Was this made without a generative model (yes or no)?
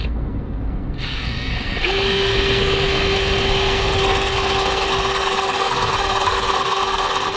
no